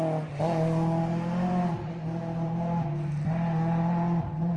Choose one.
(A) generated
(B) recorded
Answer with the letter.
B